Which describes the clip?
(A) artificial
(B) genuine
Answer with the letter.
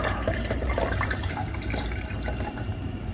A